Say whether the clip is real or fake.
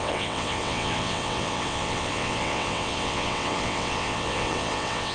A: fake